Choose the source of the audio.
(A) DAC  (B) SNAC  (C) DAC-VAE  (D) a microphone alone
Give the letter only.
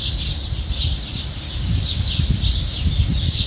D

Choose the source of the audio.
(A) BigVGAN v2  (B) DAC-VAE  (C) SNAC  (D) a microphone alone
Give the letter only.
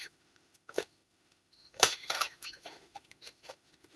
B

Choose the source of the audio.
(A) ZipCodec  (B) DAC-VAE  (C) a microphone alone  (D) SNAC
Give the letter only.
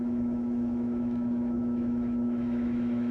B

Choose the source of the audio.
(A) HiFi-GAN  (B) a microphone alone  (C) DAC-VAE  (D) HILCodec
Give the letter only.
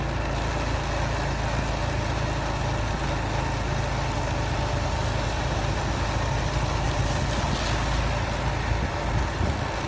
B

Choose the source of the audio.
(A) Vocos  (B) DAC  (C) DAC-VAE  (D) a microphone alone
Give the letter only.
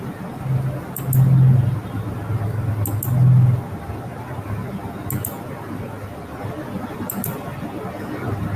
D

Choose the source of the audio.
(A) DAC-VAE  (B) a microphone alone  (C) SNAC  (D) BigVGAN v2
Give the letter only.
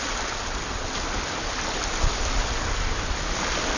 B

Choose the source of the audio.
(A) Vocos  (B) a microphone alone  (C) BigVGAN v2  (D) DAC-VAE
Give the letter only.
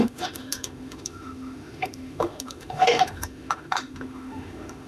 D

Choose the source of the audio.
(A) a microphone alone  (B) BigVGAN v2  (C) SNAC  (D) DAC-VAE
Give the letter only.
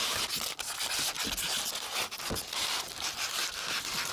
A